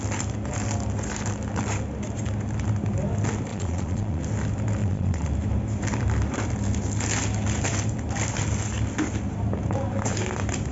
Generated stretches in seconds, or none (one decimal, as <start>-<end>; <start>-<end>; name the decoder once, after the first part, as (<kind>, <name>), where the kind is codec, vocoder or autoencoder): 3.5-4.2 (vocoder, Vocos); 4.8-5.3